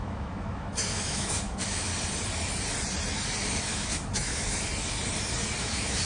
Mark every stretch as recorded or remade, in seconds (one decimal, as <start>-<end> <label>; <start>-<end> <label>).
0.0-1.9 remade; 1.9-3.7 recorded; 3.7-4.7 remade; 4.7-5.6 recorded; 5.6-6.0 remade